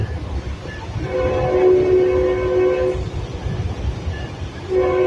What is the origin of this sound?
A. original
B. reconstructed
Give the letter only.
A